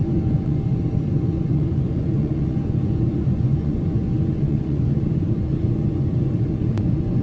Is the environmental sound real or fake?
fake